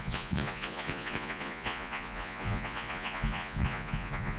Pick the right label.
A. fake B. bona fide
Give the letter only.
A